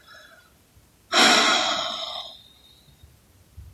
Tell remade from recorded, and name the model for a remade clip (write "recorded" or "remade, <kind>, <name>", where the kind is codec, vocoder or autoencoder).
recorded